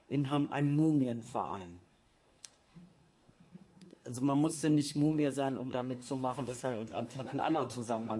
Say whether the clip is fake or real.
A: fake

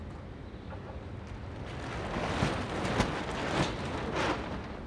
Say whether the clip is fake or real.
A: real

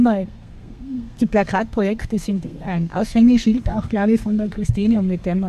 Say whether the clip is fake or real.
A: fake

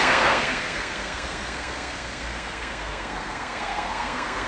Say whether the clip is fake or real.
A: fake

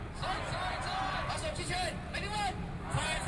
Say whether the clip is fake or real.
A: real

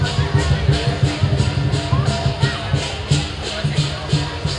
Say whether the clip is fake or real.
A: real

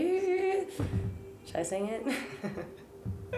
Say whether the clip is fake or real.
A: real